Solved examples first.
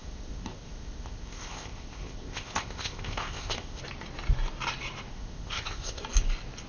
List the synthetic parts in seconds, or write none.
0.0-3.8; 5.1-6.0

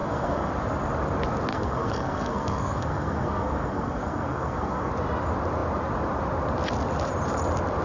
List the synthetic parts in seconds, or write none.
0.0-0.5; 1.5-4.9